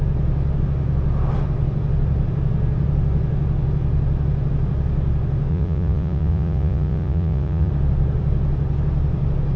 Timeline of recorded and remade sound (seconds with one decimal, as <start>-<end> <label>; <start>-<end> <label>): 0.0-5.5 recorded; 5.5-7.7 remade; 7.7-9.6 recorded